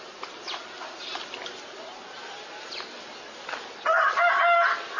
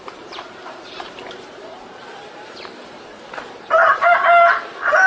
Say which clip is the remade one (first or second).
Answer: second